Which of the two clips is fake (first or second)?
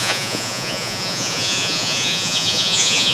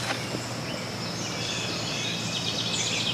first